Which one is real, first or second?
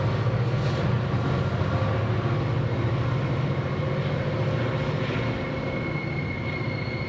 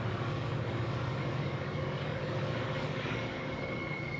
first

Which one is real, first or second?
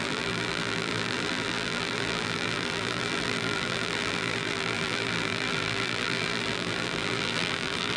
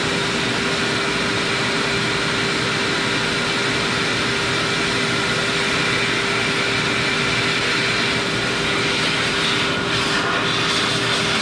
second